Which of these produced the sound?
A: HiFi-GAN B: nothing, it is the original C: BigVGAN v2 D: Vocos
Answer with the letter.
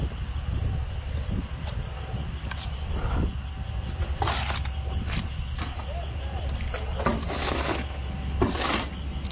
B